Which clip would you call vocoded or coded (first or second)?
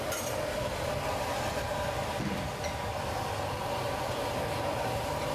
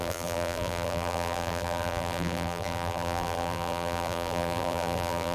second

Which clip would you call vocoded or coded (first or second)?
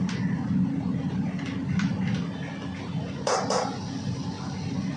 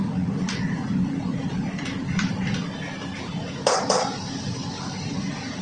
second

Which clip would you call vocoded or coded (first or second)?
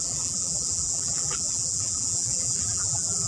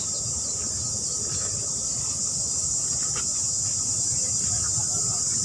first